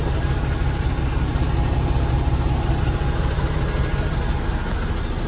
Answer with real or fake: real